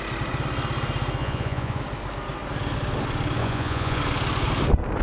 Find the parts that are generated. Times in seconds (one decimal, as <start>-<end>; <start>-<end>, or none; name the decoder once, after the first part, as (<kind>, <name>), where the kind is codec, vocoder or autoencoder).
1.2-1.8 (vocoder, Vocos); 3.4-4.0